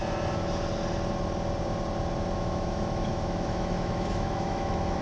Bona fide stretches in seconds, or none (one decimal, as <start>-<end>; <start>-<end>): 0.0-2.3